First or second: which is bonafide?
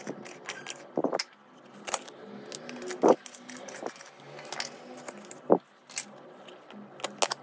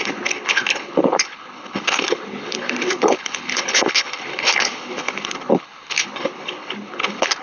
first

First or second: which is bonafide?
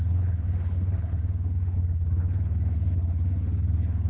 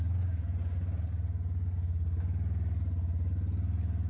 second